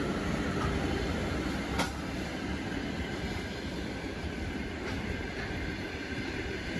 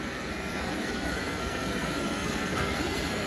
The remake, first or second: second